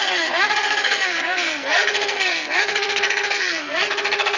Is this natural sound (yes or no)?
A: no